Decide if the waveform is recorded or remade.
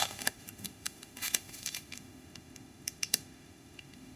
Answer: remade